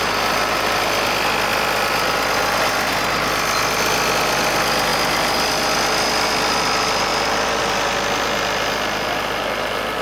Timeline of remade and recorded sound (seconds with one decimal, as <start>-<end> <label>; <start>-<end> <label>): 0.0-10.0 recorded